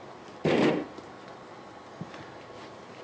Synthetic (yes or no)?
no